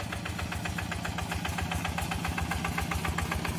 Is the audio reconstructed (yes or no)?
no